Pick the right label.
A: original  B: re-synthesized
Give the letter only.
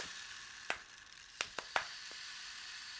A